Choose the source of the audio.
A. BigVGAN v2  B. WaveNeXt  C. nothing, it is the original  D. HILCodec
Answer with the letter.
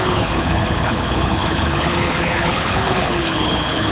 D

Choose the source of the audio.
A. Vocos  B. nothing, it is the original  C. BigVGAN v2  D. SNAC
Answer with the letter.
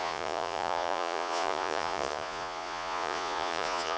A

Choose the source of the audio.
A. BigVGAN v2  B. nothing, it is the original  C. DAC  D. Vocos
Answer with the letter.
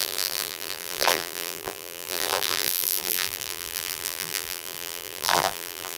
A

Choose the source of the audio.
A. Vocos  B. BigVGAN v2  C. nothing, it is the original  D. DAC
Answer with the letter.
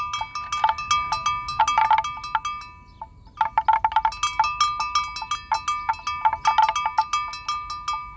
C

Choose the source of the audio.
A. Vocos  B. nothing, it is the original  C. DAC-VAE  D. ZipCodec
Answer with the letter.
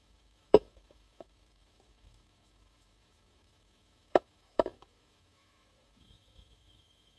C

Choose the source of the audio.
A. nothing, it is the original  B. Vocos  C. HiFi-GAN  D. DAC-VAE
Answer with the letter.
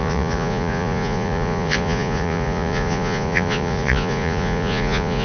B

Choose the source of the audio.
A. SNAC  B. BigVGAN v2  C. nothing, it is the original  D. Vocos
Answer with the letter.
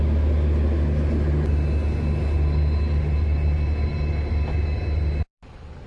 C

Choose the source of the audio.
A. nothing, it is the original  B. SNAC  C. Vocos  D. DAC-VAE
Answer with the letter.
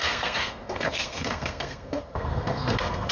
B